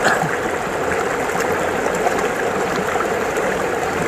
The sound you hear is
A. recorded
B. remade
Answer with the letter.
A